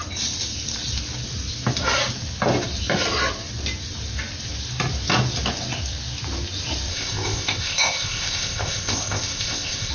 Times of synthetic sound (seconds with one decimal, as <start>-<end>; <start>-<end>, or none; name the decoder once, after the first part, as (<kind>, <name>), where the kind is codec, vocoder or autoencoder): 6.9-9.9 (codec, ZipCodec)